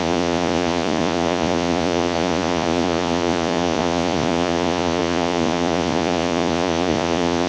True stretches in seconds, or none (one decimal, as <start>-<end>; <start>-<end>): none